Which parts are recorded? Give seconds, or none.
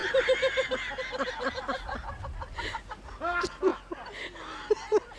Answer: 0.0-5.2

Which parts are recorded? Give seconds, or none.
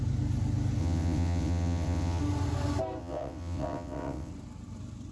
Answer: 0.0-0.8; 2.2-3.0; 4.3-5.1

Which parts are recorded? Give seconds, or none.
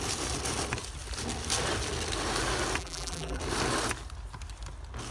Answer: 0.0-2.8; 3.4-5.1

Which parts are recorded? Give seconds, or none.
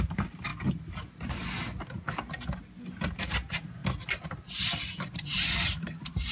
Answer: 0.5-3.2; 3.8-5.1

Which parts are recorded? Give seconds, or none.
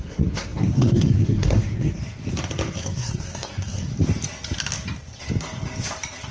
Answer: 2.0-2.8; 3.9-6.3